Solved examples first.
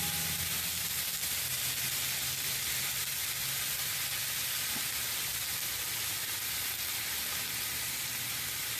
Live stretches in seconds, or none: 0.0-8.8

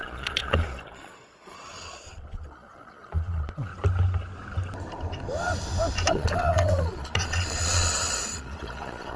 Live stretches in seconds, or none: 3.7-6.1

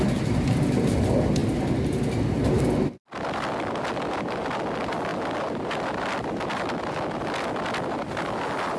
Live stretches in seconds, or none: 0.0-8.8

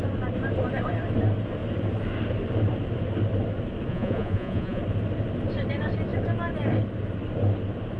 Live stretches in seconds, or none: 0.0-3.9; 4.8-8.0

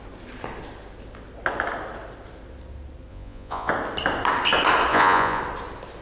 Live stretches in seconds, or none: 0.0-3.1; 3.7-4.9; 5.4-6.0